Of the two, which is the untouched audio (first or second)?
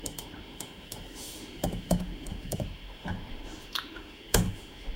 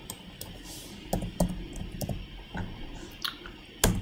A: second